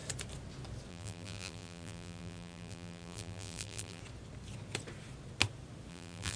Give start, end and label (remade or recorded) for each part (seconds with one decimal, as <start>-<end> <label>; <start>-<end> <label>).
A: 0.0-0.9 recorded; 0.9-4.0 remade; 4.0-5.9 recorded; 5.9-6.4 remade